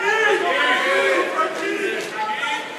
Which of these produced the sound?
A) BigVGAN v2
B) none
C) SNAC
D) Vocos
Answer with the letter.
B